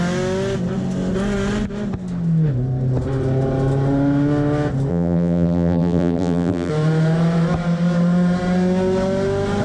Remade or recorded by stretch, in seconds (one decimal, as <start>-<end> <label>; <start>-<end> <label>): 0.0-4.9 recorded; 4.9-6.7 remade; 6.7-9.6 recorded